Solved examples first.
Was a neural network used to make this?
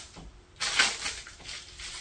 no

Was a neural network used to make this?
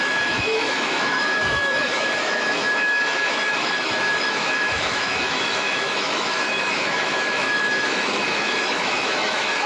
yes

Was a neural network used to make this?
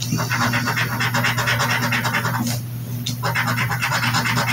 no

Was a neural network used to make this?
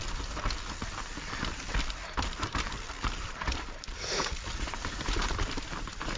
yes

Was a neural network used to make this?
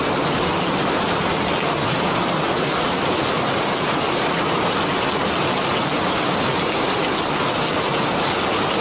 no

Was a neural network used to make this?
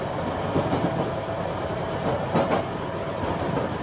yes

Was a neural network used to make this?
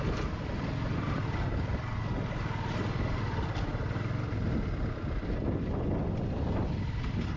no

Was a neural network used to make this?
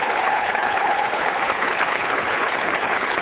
yes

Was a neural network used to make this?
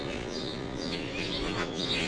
yes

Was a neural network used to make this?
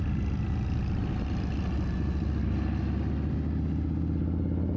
no